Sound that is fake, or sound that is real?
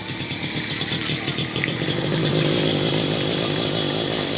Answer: fake